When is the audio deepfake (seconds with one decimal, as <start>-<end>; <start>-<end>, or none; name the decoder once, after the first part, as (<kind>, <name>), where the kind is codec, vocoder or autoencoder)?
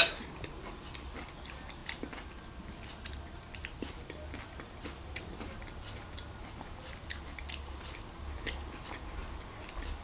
none